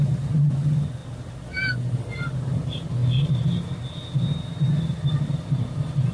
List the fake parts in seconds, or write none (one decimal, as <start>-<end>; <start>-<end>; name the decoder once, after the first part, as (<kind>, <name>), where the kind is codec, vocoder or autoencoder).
0.0-1.0 (vocoder, BigVGAN v2); 2.4-3.0; 5.0-6.1